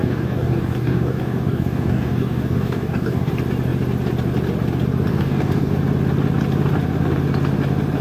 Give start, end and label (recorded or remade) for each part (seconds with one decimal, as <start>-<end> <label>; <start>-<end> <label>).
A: 0.0-3.3 remade; 3.3-5.1 recorded; 5.1-5.7 remade; 5.7-8.0 recorded